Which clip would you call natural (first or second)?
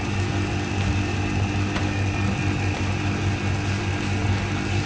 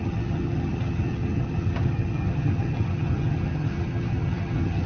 first